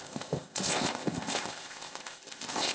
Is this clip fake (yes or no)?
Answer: yes